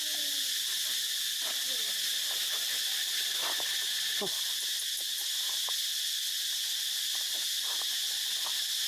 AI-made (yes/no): no